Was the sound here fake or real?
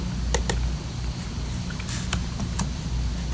real